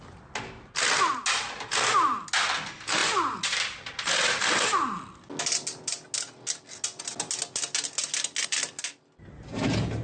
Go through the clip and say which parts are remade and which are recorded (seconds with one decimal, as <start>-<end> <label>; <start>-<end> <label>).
0.0-10.0 recorded